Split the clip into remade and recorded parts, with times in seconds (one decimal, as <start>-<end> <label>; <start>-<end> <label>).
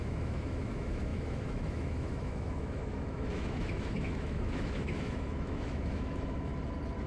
0.0-6.5 remade; 6.5-7.1 recorded